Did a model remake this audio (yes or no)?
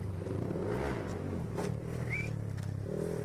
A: no